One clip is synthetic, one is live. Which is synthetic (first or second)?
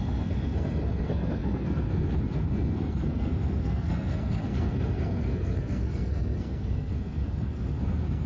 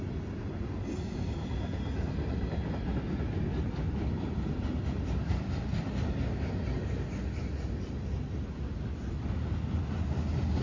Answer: first